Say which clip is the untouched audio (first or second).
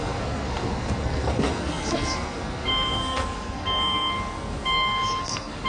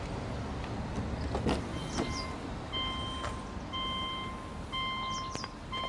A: second